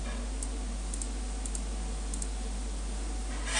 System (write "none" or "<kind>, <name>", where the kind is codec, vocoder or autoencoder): none